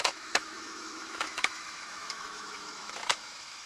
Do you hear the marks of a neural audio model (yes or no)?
yes